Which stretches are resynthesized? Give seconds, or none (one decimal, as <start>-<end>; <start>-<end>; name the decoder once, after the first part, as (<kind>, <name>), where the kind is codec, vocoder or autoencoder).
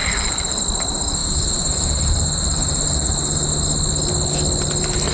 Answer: 0.0-0.6 (vocoder, BigVGAN v2); 1.2-3.5